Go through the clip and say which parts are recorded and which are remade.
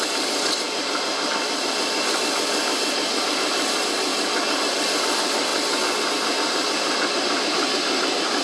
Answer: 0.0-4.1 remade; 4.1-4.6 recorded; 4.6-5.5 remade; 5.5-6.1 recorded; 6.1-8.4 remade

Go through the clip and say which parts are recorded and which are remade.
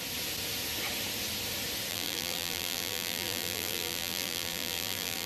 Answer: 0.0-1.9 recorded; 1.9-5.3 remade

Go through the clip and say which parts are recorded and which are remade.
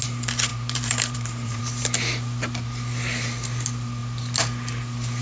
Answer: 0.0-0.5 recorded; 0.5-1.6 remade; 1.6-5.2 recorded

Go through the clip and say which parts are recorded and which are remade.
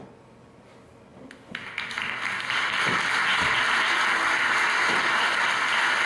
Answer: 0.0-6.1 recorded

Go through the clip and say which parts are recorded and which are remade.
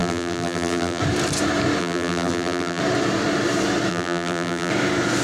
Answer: 0.0-1.0 remade; 1.0-1.8 recorded; 1.8-2.8 remade; 2.8-3.9 recorded; 3.9-4.7 remade; 4.7-5.2 recorded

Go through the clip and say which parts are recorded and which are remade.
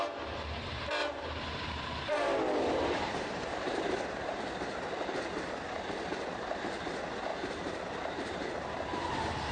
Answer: 0.0-1.0 recorded; 1.0-4.4 remade; 4.4-7.3 recorded; 7.3-9.1 remade; 9.1-9.5 recorded